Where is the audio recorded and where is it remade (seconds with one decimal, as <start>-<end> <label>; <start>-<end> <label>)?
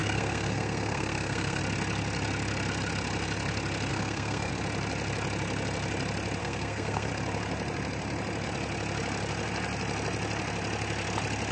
0.0-1.6 remade; 1.6-3.9 recorded; 3.9-4.5 remade; 4.5-6.4 recorded; 6.4-7.1 remade; 7.1-11.5 recorded